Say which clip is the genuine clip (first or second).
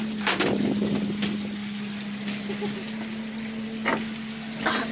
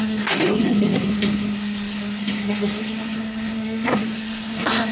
first